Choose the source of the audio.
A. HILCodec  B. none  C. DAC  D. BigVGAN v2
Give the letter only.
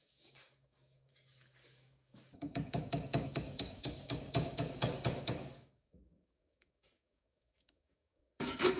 C